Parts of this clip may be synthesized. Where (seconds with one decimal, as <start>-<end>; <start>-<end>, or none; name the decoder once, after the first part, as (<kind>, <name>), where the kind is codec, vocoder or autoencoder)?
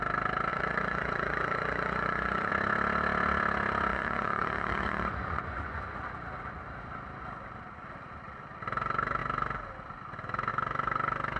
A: 0.5-2.5 (vocoder, Vocos); 3.9-5.8